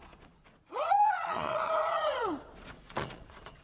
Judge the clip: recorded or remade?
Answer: remade